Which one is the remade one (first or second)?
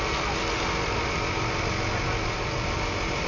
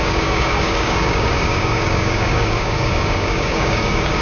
second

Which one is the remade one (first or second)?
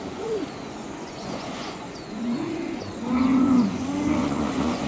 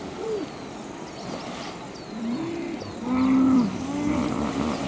first